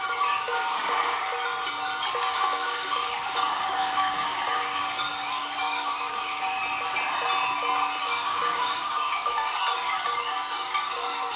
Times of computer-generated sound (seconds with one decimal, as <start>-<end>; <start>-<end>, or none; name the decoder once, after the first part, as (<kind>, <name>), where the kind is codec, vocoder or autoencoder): 0.0-1.3 (codec, DAC); 2.3-6.6; 8.0-11.4